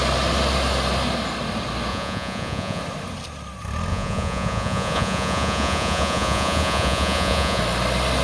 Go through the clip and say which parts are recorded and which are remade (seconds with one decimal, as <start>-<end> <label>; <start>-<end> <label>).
0.0-1.9 recorded; 1.9-2.8 remade; 2.8-3.9 recorded; 3.9-7.6 remade; 7.6-8.2 recorded